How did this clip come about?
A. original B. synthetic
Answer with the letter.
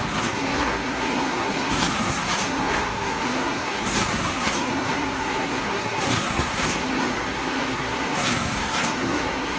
B